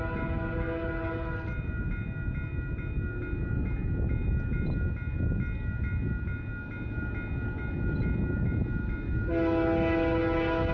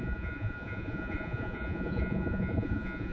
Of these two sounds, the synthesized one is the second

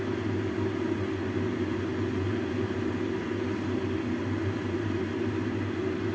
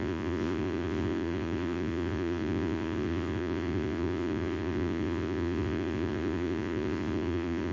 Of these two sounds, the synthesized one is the second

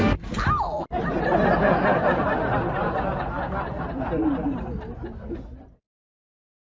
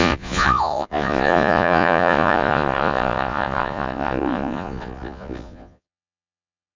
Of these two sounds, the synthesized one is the second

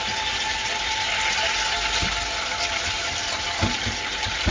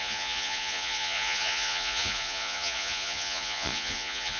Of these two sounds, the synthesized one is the second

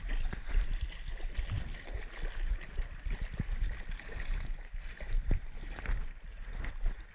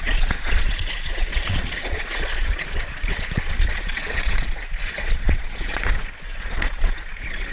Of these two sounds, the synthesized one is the second